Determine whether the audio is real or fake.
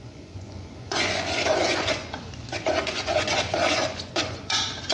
fake